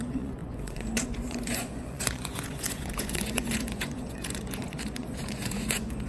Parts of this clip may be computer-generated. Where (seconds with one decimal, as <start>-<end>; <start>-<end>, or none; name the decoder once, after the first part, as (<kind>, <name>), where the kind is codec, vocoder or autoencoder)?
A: 0.0-6.1 (vocoder, Vocos)